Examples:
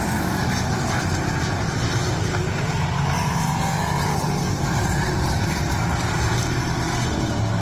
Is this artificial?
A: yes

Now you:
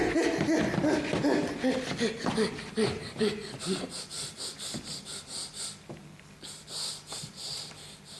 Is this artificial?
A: yes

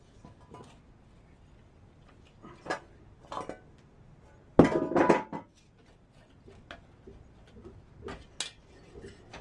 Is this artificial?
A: no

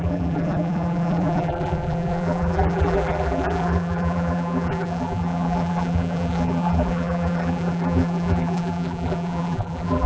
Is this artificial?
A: yes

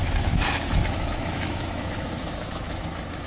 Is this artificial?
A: yes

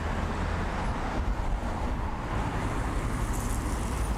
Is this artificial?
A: no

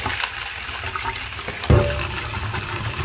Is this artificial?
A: no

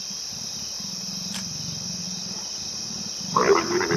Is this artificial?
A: no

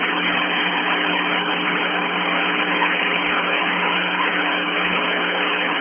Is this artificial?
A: yes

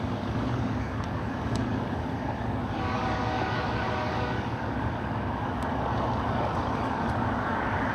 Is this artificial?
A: yes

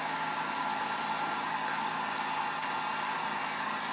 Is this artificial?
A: no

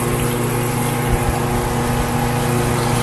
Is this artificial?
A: no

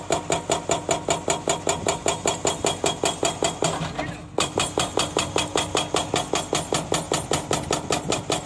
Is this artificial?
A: no